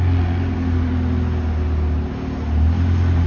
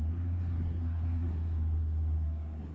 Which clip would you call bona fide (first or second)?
first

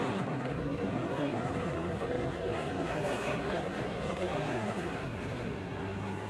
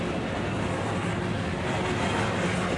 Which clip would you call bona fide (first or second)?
second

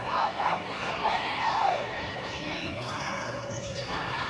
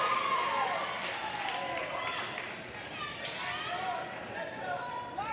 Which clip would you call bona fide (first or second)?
second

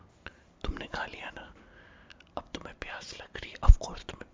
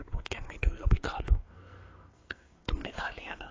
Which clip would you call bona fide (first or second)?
first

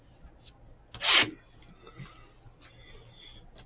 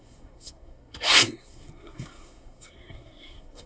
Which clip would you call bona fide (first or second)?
first